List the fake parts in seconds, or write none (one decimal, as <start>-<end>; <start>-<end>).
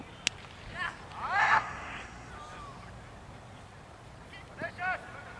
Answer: 1.4-2.3